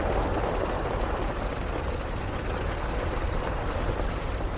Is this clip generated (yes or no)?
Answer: no